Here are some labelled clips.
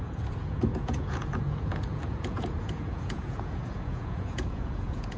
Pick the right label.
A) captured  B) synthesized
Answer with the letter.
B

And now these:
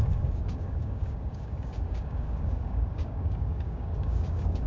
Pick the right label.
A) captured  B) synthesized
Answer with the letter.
B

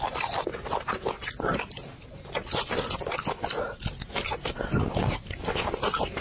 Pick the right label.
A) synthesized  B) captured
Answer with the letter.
B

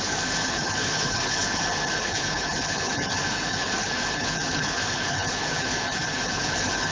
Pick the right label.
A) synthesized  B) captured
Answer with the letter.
A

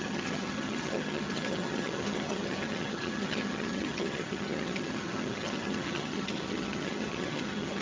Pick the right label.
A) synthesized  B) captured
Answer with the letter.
A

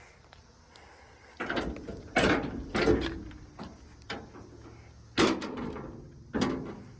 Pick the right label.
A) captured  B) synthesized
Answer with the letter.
A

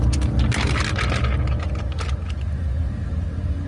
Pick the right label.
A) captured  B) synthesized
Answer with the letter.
A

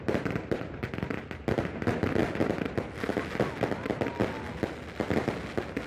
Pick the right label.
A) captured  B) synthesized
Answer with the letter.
A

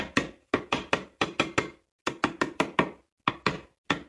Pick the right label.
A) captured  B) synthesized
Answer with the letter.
A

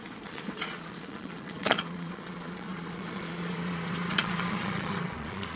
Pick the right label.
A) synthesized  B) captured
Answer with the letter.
A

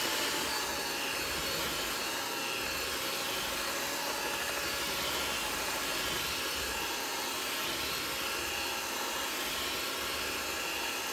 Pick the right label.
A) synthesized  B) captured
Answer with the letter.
B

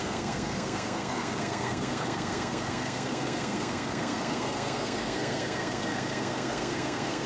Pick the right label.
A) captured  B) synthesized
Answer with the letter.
B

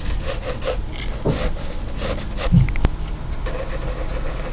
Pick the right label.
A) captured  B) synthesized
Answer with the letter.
A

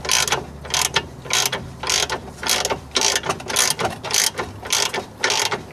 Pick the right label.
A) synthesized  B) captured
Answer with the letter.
B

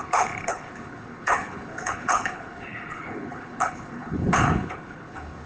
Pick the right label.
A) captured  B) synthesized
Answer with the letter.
B